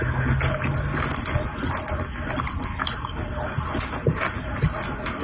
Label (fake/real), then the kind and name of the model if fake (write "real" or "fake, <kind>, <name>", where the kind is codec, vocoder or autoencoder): real